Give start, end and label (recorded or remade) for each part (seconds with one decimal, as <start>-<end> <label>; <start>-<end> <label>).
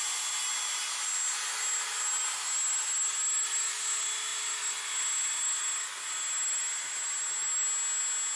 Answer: 0.0-8.4 recorded